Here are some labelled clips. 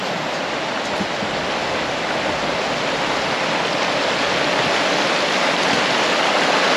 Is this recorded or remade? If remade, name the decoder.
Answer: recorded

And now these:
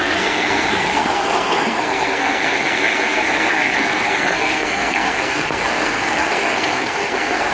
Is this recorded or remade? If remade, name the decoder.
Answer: remade, codec, SNAC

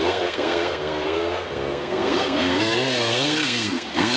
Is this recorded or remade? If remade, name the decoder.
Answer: remade, codec, SNAC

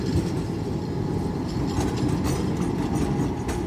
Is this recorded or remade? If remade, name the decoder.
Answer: recorded